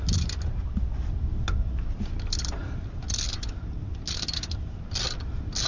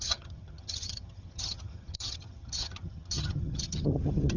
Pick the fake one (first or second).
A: second